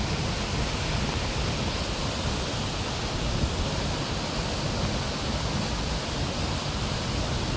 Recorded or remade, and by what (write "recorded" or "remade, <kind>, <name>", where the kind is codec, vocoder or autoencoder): recorded